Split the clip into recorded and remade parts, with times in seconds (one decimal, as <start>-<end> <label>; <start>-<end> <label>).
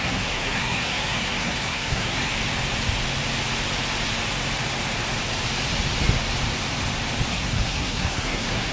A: 0.0-2.3 remade; 2.3-7.3 recorded; 7.3-8.7 remade